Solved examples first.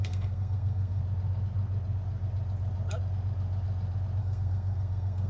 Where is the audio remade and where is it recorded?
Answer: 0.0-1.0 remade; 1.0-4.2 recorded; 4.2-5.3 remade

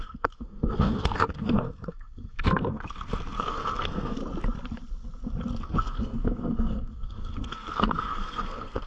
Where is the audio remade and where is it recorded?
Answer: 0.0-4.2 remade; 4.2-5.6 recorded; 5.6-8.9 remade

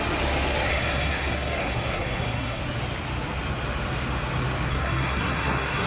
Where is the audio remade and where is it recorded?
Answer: 0.0-0.7 recorded; 0.7-2.6 remade; 2.6-4.7 recorded; 4.7-5.9 remade

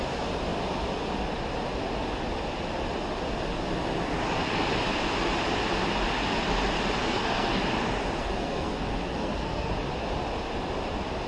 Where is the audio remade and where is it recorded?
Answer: 0.0-7.0 recorded; 7.0-7.6 remade; 7.6-8.2 recorded; 8.2-9.7 remade; 9.7-11.3 recorded